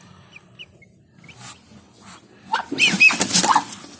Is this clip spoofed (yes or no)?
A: no